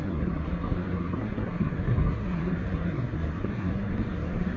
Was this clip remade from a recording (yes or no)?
yes